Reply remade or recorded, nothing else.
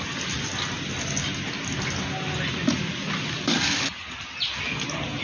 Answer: recorded